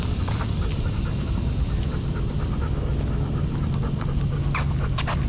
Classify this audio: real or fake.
real